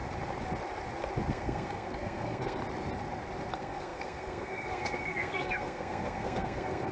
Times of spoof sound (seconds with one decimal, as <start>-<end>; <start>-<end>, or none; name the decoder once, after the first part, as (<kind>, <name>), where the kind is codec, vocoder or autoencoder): 1.3-2.6 (codec, SNAC); 3.5-6.9